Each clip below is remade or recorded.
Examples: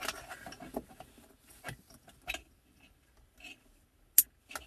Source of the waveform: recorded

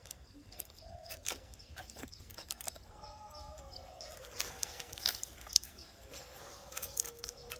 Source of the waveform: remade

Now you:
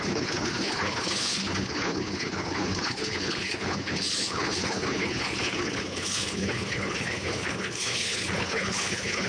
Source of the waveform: remade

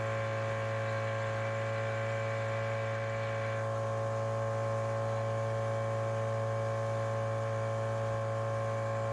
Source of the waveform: recorded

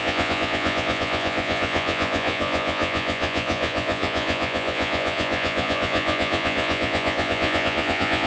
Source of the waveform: remade